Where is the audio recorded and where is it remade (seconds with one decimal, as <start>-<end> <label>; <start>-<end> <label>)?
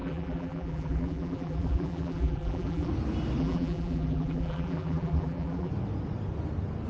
0.0-2.9 remade; 2.9-3.4 recorded; 3.4-5.7 remade; 5.7-6.9 recorded